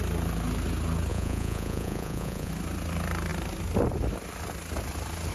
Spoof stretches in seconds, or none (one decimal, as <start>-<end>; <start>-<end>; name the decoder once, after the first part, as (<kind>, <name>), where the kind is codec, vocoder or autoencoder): 1.1-2.5 (vocoder, Vocos)